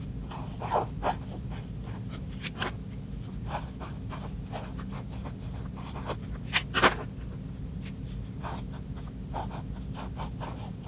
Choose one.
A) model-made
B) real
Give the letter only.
B